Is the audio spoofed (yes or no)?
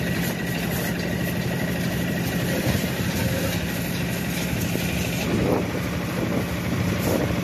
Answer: no